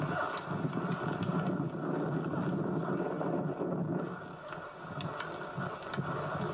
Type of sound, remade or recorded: recorded